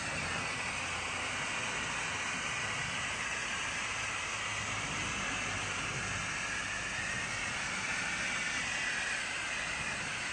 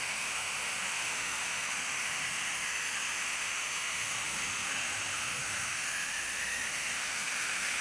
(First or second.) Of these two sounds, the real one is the first